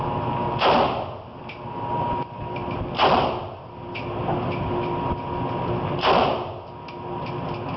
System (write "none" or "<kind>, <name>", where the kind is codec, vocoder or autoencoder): none